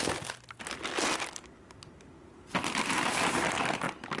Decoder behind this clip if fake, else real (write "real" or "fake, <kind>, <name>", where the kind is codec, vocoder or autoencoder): real